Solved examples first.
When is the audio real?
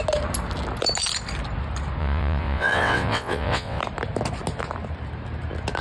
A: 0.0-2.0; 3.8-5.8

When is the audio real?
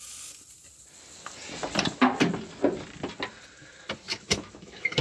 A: 0.0-4.1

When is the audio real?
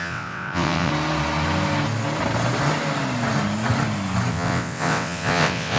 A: 0.9-4.3